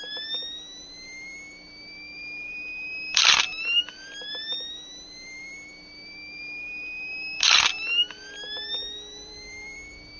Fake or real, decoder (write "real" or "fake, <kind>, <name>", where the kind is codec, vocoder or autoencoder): fake, vocoder, BigVGAN v2